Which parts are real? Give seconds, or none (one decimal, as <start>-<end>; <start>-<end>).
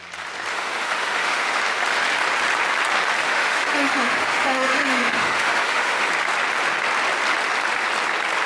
0.0-0.5; 1.6-3.2; 6.1-8.5